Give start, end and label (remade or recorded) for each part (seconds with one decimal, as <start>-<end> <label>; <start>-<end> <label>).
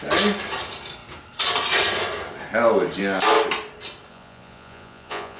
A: 0.0-4.1 recorded; 4.1-5.4 remade